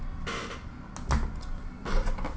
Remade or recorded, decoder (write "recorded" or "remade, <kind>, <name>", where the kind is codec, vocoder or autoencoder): recorded